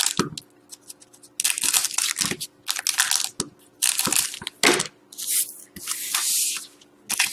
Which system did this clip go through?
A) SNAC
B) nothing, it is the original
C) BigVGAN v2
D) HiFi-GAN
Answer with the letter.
B